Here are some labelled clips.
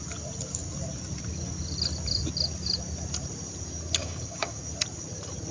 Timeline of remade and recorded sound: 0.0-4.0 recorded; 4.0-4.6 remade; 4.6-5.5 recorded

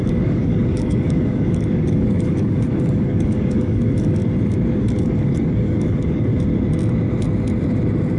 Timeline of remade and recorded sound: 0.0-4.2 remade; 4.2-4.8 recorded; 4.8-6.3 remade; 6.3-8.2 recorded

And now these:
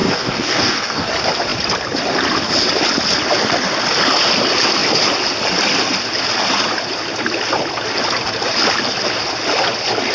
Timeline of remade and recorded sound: 0.0-1.1 remade; 1.1-10.1 recorded

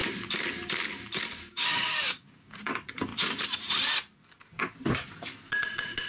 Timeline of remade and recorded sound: 0.0-1.3 recorded; 1.3-2.5 remade; 2.5-6.1 recorded

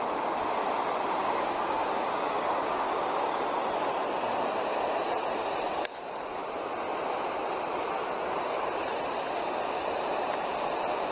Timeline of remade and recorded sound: 0.0-1.2 recorded; 1.2-3.3 remade; 3.3-11.1 recorded

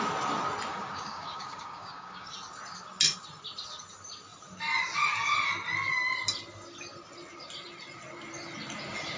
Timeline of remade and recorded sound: 0.0-0.7 recorded; 0.7-2.3 remade; 2.3-9.2 recorded

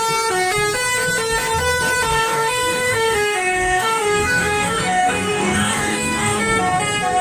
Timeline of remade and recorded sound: 0.0-2.1 recorded; 2.1-6.4 remade; 6.4-7.2 recorded

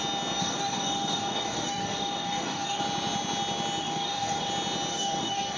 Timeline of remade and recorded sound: 0.0-0.4 recorded; 0.4-2.8 remade; 2.8-3.8 recorded; 3.8-4.5 remade; 4.5-4.9 recorded; 4.9-5.6 remade